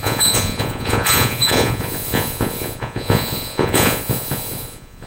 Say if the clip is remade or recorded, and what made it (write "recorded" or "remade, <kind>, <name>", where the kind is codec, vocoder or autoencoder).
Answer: remade, vocoder, Vocos